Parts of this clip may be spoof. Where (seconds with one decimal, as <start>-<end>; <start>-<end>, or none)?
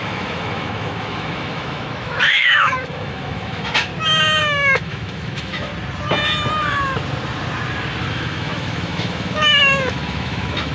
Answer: 0.0-3.9; 4.4-5.7; 8.1-10.7